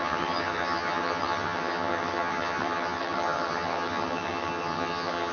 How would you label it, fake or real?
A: fake